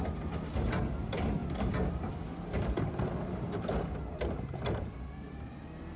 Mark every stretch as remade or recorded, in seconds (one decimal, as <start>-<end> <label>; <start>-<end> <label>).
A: 0.0-6.0 recorded